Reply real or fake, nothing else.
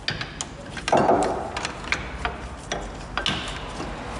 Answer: real